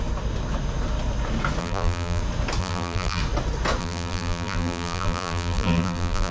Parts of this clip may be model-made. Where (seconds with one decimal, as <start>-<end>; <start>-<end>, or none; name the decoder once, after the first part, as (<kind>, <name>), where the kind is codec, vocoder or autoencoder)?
1.6-2.2 (vocoder, BigVGAN v2); 2.6-3.2; 3.8-6.3